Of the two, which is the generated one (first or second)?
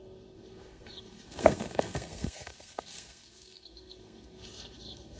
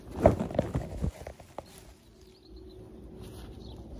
first